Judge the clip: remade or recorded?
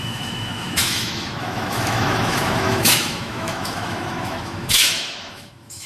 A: remade